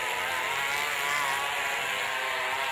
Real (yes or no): yes